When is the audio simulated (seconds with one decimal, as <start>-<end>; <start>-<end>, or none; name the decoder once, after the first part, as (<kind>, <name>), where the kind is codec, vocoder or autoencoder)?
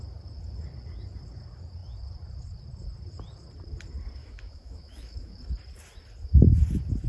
4.2-5.4 (autoencoder, DAC-VAE)